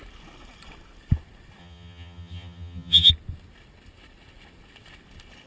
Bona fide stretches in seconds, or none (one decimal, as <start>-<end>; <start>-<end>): 0.0-1.6; 3.1-5.5